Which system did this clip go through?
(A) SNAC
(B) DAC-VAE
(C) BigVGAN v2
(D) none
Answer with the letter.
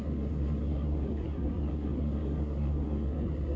A